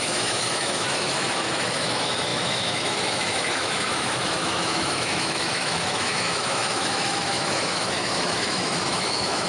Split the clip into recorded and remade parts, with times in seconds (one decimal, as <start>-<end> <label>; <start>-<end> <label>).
0.0-9.5 remade